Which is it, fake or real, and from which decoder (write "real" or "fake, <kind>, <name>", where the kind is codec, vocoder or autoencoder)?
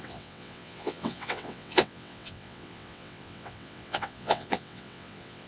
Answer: fake, vocoder, WaveNeXt